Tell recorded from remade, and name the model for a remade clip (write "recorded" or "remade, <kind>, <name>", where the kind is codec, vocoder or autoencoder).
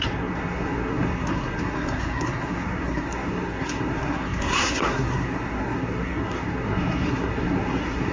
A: remade, codec, SNAC